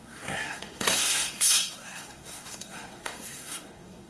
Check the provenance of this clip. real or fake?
fake